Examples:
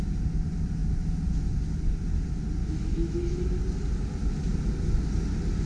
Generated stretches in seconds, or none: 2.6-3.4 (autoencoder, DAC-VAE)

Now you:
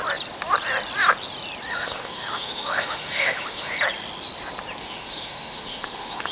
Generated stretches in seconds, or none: 1.7-3.7 (autoencoder, DAC-VAE); 4.8-6.3

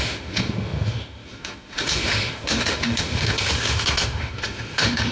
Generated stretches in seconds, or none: 0.0-5.1 (autoencoder, DAC-VAE)

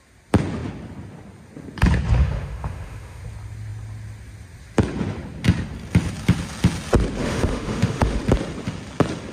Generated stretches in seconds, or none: 2.2-3.2 (autoencoder, DAC-VAE); 7.2-8.2